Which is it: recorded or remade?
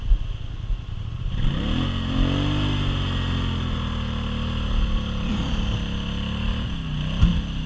recorded